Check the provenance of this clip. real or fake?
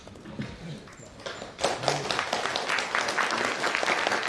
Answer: real